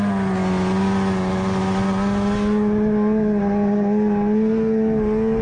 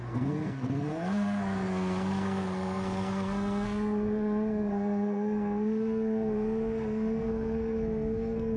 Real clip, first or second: first